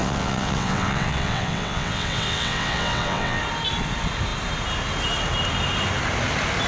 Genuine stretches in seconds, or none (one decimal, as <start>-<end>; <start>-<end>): 3.4-6.7